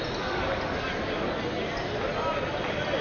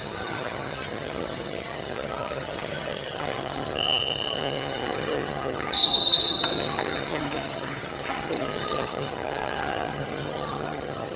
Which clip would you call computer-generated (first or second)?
second